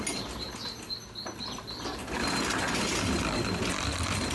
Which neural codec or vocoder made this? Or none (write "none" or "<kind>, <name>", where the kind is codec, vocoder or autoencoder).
none